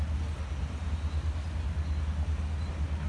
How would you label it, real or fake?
real